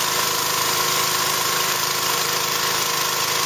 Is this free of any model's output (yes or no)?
no